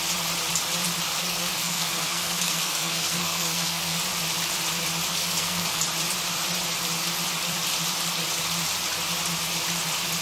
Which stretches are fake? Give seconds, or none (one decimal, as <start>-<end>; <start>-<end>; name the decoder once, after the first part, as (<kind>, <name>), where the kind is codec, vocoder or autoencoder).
1.2-4.0 (codec, SNAC); 5.1-5.8